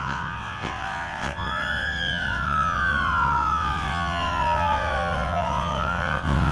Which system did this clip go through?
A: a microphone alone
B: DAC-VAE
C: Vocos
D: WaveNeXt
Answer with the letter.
D